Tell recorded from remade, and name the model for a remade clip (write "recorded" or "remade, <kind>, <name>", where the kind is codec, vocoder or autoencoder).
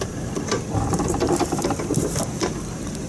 remade, vocoder, BigVGAN v2